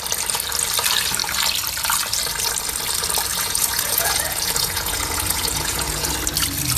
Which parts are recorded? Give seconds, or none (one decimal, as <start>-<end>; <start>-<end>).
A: 0.0-3.3; 6.1-6.8